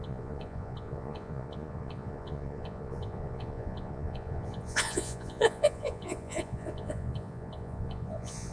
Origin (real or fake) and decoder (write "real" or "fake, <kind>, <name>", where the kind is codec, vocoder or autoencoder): fake, vocoder, Vocos